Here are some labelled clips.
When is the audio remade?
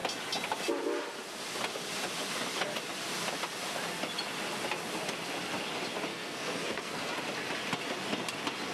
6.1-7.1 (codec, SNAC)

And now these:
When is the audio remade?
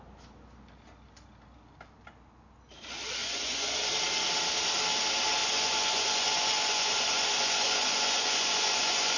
3.2-3.9 (vocoder, Vocos); 5.4-9.2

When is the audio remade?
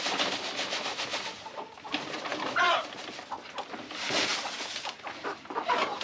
none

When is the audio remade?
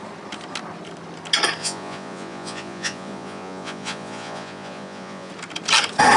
1.6-5.3 (vocoder, Vocos)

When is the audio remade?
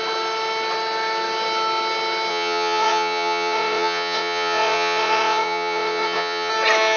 2.3-6.5 (vocoder, Vocos)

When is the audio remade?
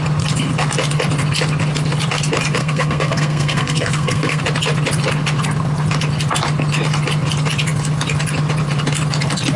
2.6-4.4 (codec, SNAC)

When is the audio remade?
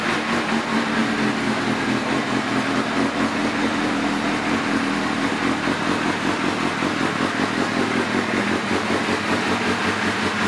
none